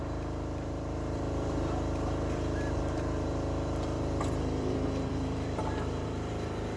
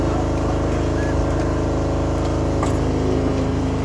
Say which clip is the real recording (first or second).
second